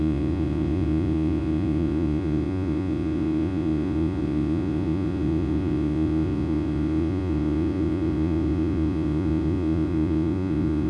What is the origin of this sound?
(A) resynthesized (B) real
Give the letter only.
A